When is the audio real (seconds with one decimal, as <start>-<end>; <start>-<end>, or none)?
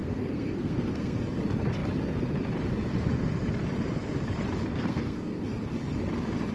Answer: 1.2-4.7; 5.4-6.5